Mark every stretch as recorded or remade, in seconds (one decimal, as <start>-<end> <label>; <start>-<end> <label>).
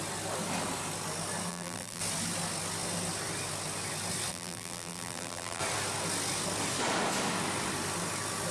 0.0-1.5 recorded; 1.5-2.0 remade; 2.0-4.3 recorded; 4.3-5.6 remade; 5.6-8.5 recorded